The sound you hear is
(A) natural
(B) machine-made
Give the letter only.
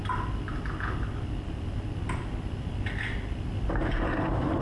A